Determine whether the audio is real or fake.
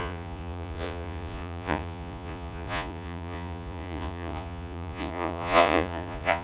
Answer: fake